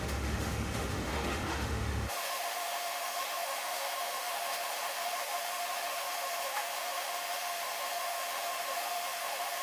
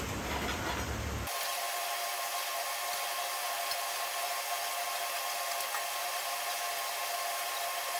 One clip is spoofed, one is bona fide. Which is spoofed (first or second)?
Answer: first